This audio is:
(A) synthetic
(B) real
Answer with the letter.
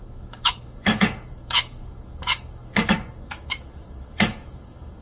A